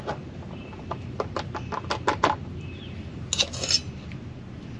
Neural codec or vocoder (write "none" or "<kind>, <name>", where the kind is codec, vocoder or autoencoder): none